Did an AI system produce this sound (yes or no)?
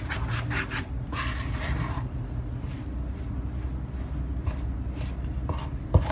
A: no